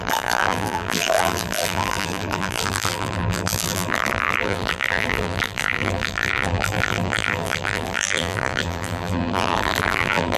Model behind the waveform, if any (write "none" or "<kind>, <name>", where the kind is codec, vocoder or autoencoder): vocoder, BigVGAN v2